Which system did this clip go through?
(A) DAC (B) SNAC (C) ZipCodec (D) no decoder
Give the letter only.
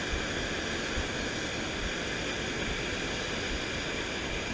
D